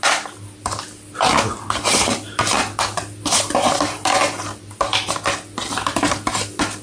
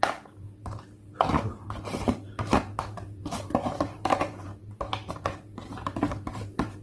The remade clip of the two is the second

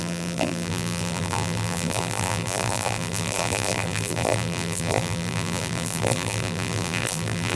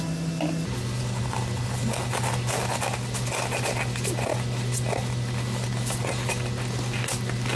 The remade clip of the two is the first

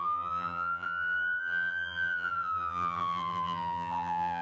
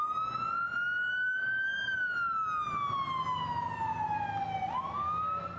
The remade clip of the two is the first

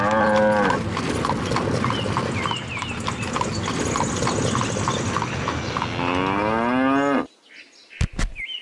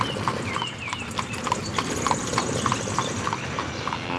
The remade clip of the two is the second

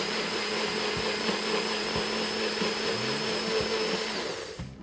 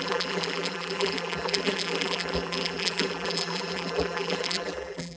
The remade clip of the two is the second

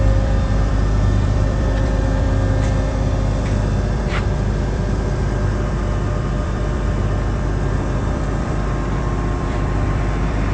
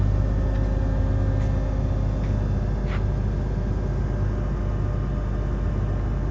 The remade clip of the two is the first